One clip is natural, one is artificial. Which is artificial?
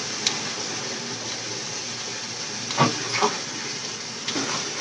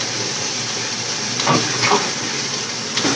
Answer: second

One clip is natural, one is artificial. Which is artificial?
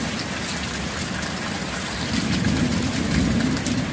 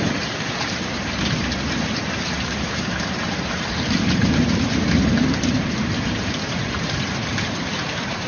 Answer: second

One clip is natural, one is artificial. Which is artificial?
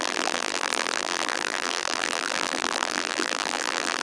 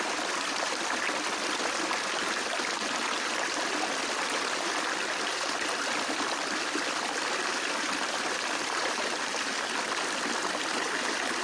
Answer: first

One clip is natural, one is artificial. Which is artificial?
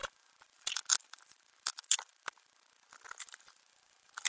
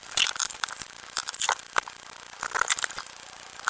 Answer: second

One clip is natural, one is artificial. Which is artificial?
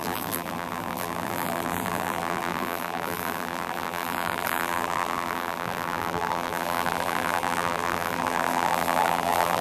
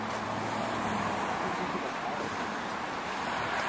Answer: first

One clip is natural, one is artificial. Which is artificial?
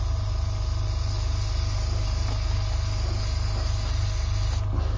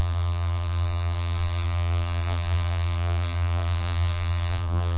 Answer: second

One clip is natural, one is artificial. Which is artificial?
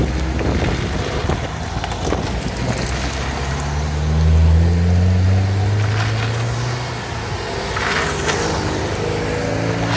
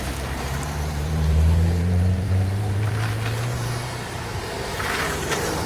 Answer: second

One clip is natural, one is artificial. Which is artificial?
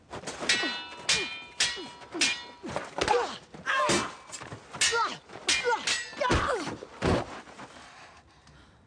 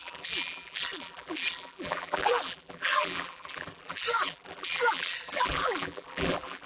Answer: second